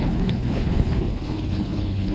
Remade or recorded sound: remade